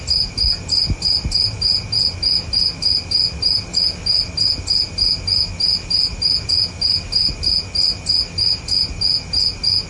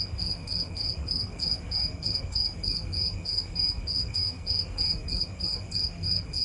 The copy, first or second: second